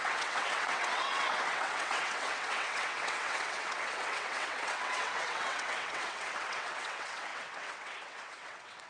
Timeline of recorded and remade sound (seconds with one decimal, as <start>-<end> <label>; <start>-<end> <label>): 0.0-8.9 remade